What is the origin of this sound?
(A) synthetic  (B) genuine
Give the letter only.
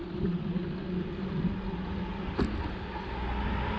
B